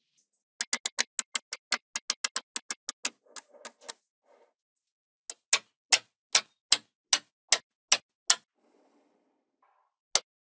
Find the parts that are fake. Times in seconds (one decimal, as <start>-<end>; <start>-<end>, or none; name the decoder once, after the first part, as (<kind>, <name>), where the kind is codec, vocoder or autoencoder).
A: none